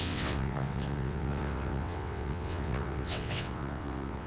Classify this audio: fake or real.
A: fake